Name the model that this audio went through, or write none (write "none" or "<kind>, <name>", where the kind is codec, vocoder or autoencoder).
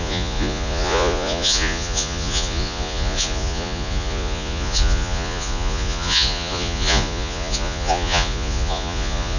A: vocoder, Vocos